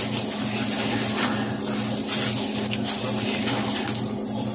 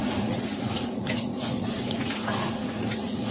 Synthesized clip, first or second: second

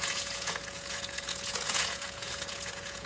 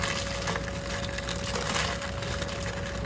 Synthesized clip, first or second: first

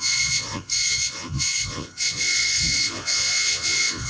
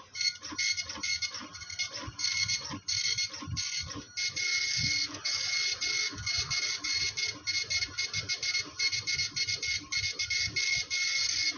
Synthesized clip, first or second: first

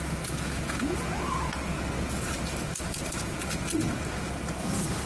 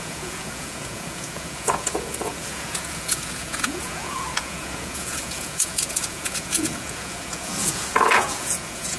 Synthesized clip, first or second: second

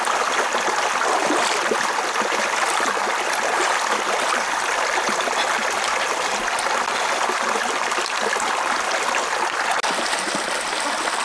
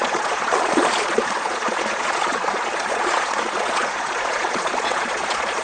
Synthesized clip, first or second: second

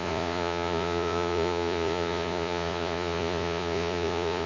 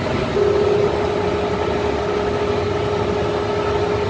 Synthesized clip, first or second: first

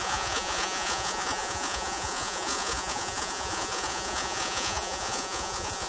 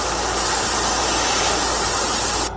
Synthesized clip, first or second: first